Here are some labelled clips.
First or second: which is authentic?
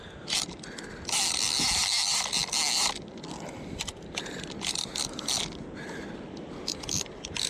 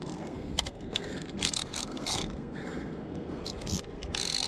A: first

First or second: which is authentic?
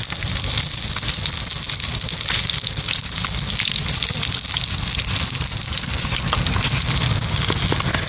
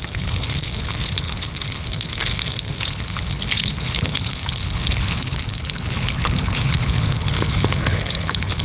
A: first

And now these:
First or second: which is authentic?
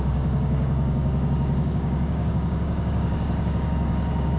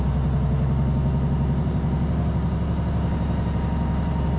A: second